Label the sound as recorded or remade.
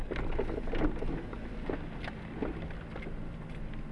recorded